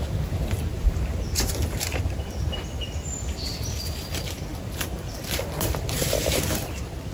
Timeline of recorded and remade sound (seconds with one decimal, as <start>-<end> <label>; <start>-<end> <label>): 0.0-7.1 remade